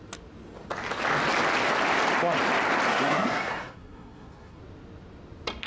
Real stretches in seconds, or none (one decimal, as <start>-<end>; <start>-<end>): 0.0-2.9; 4.6-5.7